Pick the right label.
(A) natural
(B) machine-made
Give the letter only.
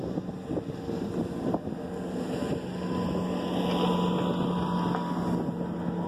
A